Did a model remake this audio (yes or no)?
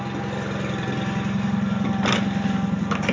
no